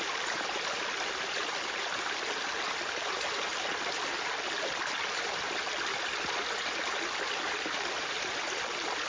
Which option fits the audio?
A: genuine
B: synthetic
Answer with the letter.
A